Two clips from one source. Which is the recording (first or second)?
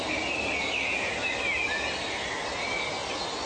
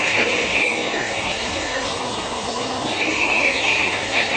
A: first